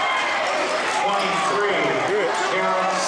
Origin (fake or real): real